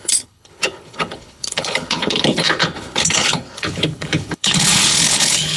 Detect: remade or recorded remade